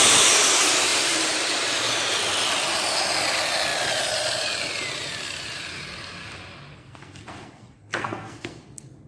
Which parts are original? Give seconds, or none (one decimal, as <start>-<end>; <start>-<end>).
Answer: 0.0-6.7